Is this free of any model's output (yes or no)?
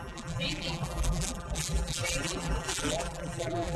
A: no